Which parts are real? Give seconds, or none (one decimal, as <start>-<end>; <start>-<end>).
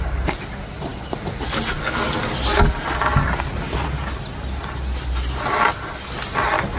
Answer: 0.0-6.8